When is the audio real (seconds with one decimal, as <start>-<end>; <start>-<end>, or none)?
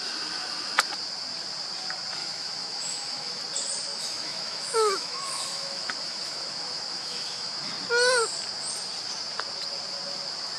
0.0-2.2; 3.4-3.9; 7.7-10.6